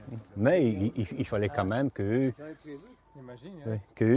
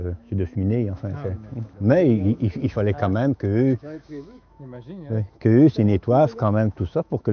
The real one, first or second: first